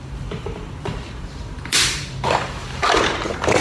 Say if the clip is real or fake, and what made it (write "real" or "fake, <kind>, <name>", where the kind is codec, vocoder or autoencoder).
fake, vocoder, BigVGAN v2